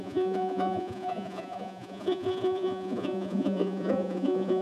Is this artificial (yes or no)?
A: yes